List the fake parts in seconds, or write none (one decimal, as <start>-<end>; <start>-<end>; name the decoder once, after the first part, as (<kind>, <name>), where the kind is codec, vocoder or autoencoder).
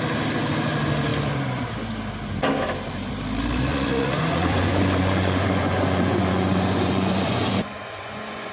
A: 3.7-8.5 (vocoder, Vocos)